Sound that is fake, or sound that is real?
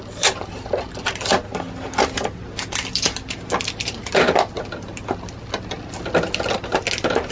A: real